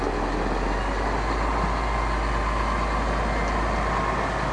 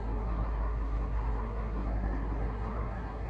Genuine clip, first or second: first